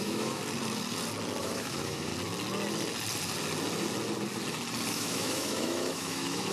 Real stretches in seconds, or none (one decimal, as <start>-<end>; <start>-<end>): 0.4-1.4; 2.1-4.9